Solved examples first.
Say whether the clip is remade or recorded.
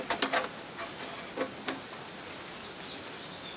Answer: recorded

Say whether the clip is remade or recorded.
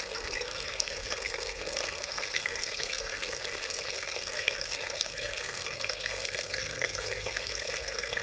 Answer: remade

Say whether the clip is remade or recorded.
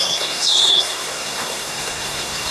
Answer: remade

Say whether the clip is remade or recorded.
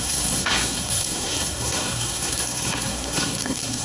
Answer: remade